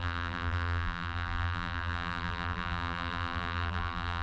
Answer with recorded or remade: remade